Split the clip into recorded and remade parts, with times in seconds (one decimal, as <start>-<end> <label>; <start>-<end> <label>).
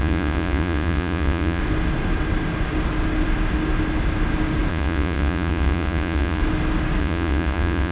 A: 0.0-1.6 remade; 1.6-4.7 recorded; 4.7-6.4 remade; 6.4-7.0 recorded; 7.0-7.9 remade